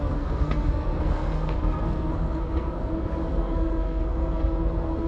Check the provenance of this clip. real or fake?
fake